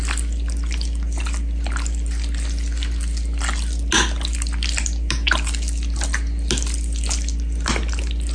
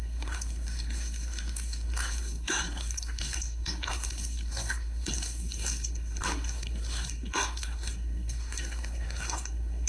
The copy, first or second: second